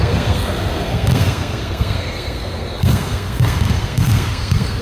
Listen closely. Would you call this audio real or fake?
fake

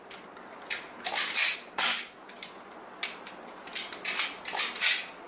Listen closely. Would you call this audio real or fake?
real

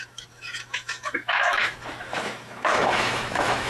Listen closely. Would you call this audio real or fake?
fake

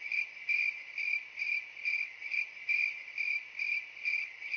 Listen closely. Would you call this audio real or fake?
real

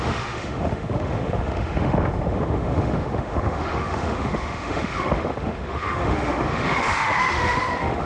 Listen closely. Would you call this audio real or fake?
fake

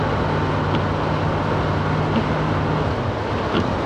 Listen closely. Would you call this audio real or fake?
real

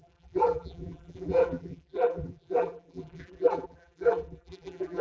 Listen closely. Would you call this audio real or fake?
fake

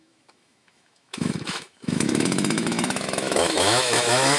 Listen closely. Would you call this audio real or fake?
fake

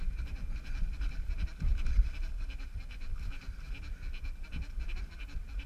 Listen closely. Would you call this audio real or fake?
real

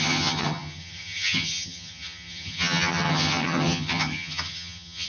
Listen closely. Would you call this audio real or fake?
fake